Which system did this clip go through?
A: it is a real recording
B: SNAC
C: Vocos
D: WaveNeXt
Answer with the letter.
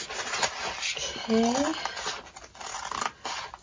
A